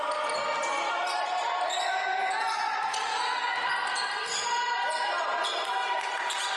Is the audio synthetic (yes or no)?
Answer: no